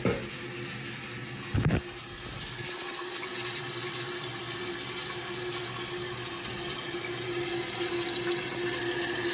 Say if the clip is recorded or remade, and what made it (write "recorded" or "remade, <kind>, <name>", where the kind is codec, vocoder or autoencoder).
recorded